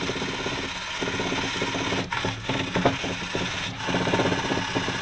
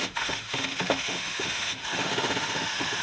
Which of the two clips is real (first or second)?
first